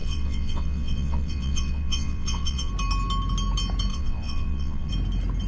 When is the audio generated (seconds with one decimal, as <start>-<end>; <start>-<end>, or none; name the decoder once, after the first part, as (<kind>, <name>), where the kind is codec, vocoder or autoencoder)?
0.0-2.7 (vocoder, WaveNeXt); 3.9-4.9